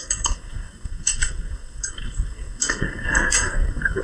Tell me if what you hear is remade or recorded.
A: remade